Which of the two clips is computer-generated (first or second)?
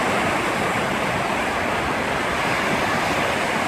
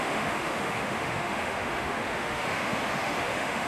second